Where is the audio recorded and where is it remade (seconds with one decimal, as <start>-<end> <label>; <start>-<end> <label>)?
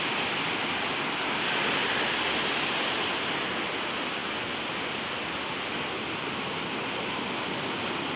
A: 0.0-8.2 recorded